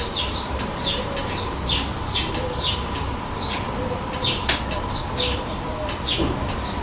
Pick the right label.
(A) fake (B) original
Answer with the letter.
B